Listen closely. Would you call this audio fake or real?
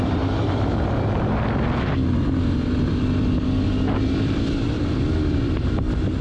fake